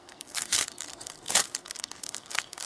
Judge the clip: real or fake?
fake